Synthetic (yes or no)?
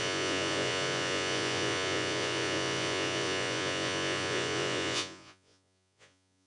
yes